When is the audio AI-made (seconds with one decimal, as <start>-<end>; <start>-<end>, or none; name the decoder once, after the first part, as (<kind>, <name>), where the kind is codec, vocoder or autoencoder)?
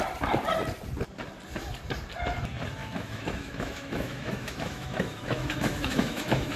2.8-6.6 (autoencoder, DAC-VAE)